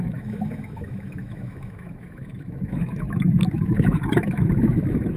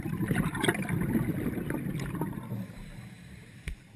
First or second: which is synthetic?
first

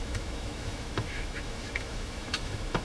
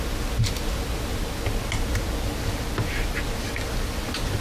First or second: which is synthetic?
first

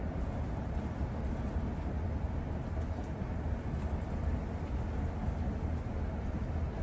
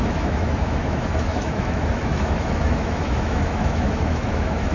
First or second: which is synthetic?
second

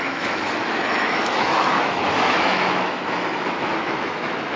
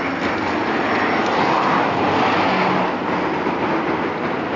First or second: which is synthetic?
first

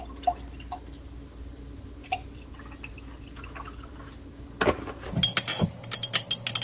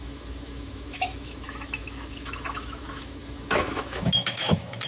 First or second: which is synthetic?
second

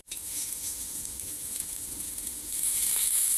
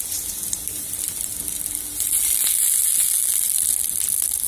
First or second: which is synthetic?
first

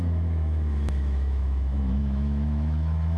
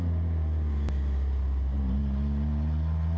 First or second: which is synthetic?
first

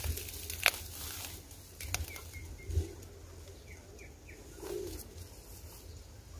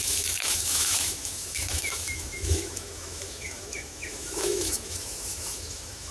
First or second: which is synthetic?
second